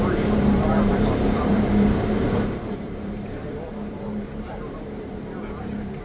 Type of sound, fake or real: fake